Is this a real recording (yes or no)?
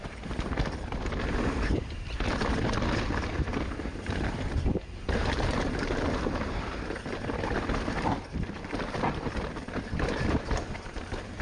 no